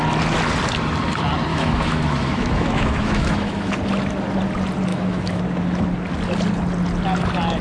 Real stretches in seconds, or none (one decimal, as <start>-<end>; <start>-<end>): 0.0-1.5; 3.7-4.9; 5.4-7.6